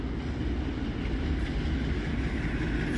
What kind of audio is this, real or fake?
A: real